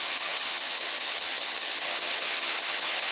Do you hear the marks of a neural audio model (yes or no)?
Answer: yes